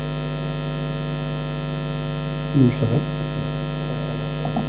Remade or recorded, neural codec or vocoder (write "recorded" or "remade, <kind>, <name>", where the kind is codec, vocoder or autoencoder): recorded